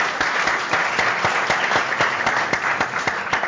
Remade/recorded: recorded